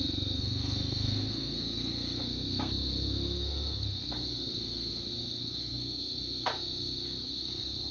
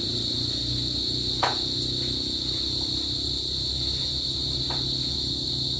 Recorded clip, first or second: second